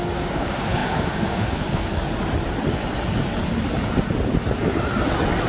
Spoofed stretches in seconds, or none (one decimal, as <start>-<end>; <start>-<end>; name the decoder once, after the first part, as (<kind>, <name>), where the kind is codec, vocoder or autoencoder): 0.0-1.9 (codec, DAC)